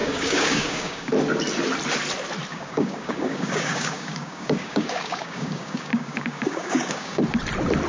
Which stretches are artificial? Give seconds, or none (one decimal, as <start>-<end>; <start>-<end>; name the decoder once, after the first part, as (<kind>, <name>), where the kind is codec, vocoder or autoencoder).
0.0-1.1 (codec, DAC); 2.5-7.2